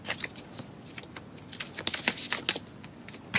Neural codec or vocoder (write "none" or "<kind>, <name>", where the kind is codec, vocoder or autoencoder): none